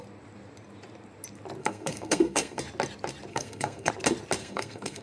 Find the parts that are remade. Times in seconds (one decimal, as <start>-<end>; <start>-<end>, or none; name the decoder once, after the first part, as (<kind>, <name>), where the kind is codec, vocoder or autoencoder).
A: 1.6-2.6 (codec, SNAC); 3.3-3.9; 4.4-5.0

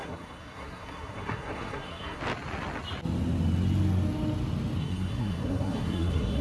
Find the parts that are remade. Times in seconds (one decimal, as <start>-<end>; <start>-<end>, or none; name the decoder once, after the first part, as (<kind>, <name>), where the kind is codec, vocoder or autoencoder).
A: 0.0-2.2 (codec, SNAC); 4.8-6.4

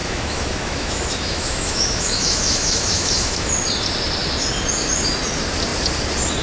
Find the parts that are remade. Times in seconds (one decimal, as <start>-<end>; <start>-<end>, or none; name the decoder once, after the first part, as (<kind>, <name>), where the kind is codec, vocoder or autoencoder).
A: 0.0-3.5 (autoencoder, DAC-VAE)

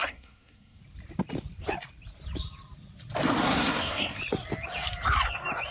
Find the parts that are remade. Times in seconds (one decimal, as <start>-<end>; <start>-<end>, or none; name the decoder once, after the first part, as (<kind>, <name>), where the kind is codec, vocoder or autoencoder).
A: 0.0-0.8 (codec, SNAC); 3.4-4.2

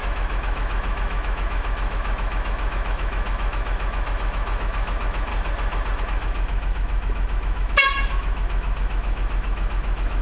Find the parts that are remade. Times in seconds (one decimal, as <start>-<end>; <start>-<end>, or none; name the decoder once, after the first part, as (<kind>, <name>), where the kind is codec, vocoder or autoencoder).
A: 0.0-5.3 (autoencoder, DAC-VAE); 6.0-10.2

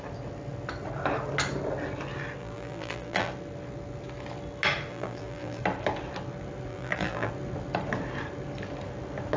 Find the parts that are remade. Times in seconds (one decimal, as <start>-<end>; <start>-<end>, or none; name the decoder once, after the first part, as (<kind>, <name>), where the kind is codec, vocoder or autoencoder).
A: 2.4-3.3 (vocoder, BigVGAN v2); 4.9-5.6; 6.7-7.3

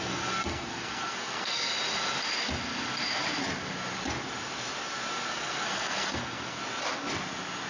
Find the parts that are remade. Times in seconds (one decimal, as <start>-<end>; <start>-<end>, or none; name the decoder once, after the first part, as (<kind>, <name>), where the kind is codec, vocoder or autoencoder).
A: 0.0-1.7 (codec, SNAC); 5.3-6.6